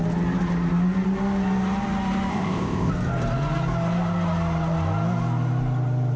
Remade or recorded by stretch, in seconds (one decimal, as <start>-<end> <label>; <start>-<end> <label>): 0.0-2.3 recorded; 2.3-2.9 remade; 2.9-6.2 recorded